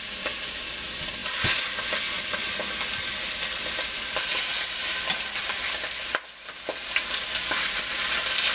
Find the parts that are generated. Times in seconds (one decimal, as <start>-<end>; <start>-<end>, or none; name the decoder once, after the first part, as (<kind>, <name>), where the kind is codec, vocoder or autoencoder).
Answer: none